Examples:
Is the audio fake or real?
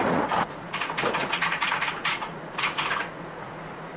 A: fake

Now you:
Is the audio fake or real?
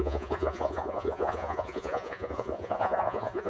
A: fake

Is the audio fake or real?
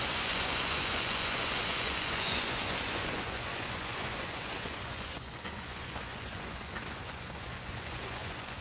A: fake